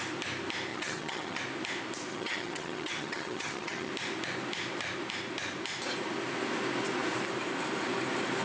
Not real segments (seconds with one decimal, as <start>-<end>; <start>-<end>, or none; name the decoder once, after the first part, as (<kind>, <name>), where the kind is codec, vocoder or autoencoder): 0.7-1.4 (vocoder, HiFi-GAN); 2.1-3.9

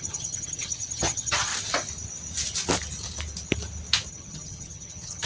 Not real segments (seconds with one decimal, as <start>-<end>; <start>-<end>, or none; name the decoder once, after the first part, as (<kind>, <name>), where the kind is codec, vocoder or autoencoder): 0.0-1.5 (vocoder, HiFi-GAN); 4.1-5.3

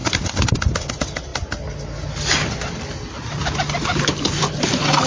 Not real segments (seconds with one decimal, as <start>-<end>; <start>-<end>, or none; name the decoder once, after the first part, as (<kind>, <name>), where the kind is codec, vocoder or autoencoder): none